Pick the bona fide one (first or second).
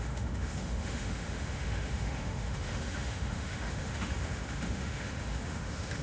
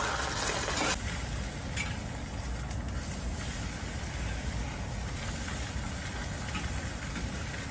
second